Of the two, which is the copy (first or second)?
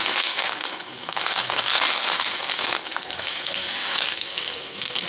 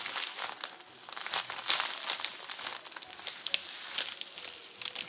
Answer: first